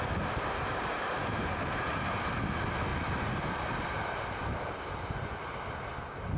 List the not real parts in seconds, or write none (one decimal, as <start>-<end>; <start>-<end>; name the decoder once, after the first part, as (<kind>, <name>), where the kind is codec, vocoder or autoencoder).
none